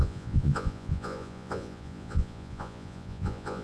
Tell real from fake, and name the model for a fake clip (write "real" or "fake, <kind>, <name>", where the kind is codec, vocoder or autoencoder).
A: fake, vocoder, Vocos